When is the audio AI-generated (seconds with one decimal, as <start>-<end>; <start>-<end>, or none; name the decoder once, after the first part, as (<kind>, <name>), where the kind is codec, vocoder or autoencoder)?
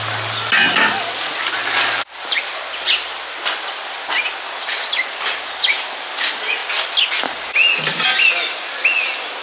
none